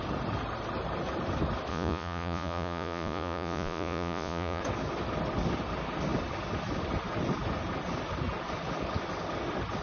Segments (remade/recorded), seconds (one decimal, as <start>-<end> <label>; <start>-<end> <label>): 0.0-1.7 recorded; 1.7-4.6 remade; 4.6-9.8 recorded